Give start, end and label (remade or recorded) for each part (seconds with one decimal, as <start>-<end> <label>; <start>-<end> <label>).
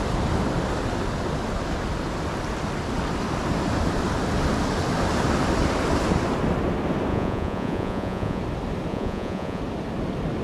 0.0-7.1 recorded; 7.1-8.4 remade; 8.4-8.9 recorded; 8.9-9.6 remade; 9.6-10.4 recorded